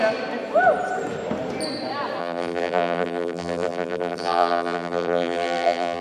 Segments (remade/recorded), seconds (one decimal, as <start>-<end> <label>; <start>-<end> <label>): 0.0-2.2 recorded; 2.2-6.0 remade